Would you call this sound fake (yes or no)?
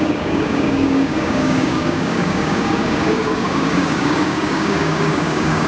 yes